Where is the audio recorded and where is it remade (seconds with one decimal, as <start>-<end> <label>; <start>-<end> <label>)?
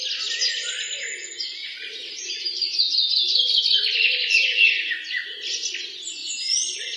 0.0-1.6 recorded; 1.6-3.6 remade; 3.6-6.2 recorded; 6.2-7.0 remade